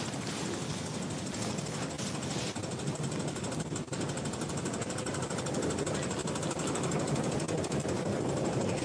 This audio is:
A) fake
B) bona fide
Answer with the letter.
B